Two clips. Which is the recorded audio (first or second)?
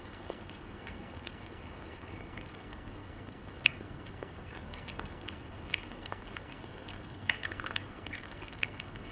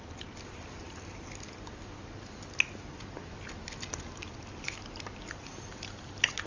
second